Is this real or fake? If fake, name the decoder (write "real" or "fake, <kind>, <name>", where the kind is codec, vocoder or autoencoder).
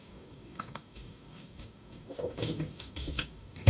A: fake, codec, DAC